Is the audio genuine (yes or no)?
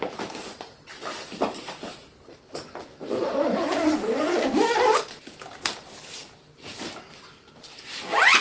yes